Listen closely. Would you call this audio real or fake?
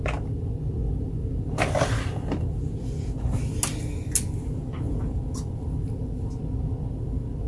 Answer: real